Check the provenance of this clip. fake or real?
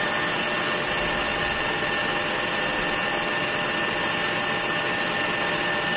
real